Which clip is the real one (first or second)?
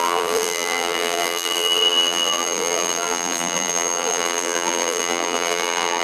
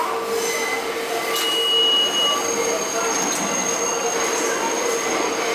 second